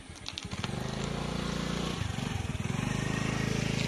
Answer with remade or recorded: recorded